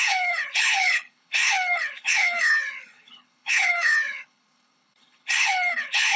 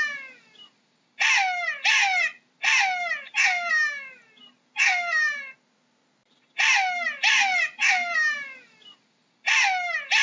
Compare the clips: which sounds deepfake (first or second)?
first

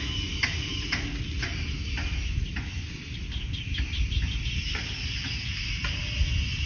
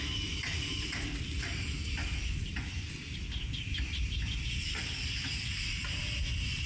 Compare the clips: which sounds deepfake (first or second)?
second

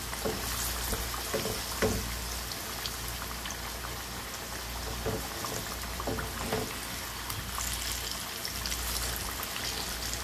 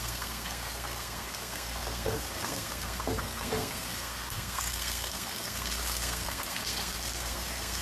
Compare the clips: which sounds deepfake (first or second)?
second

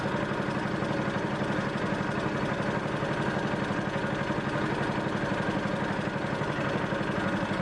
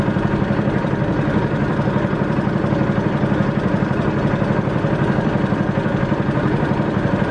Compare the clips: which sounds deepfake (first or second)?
second